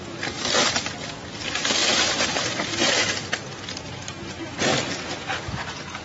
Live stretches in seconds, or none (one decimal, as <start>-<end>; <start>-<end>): 0.0-1.8; 3.9-6.0